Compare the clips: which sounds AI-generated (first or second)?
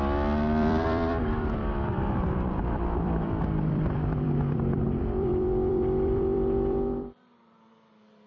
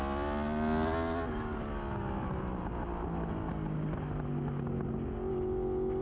first